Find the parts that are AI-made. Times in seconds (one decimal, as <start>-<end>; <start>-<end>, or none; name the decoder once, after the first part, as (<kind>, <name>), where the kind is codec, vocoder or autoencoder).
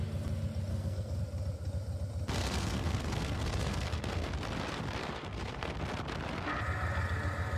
0.7-1.2 (codec, SNAC); 2.4-4.3; 5.0-5.7